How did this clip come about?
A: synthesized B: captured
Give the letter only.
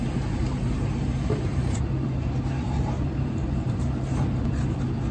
A